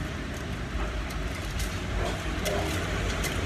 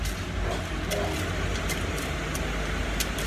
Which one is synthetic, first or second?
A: first